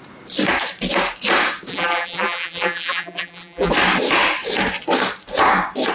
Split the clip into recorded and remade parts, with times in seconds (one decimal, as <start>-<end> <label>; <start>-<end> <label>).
0.0-1.7 recorded; 1.7-3.7 remade; 3.7-5.9 recorded